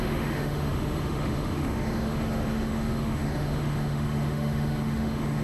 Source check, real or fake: fake